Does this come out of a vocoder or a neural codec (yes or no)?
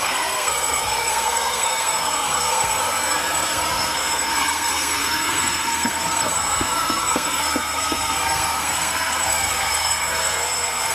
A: yes